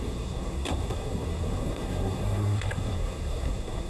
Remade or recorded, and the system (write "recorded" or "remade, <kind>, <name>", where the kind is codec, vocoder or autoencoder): remade, codec, SNAC